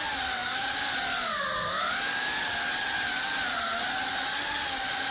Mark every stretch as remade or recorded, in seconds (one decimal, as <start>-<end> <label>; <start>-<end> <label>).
0.0-1.5 recorded; 1.5-2.4 remade; 2.4-5.1 recorded